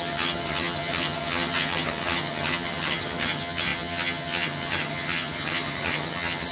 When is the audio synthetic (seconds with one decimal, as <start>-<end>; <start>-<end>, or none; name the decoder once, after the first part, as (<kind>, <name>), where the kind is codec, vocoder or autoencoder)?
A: 0.0-6.5 (vocoder, HiFi-GAN)